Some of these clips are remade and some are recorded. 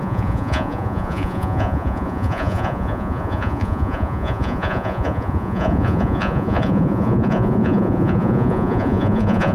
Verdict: remade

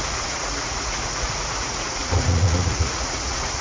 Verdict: remade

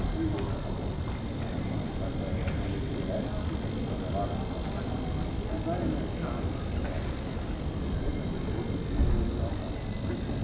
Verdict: recorded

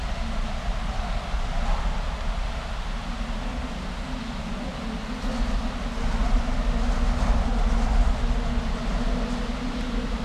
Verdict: recorded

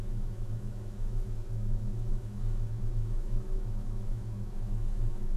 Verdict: remade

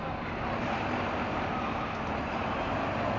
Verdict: recorded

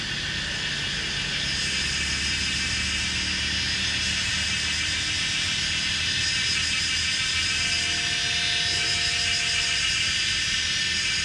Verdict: recorded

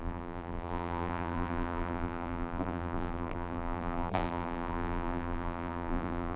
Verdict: remade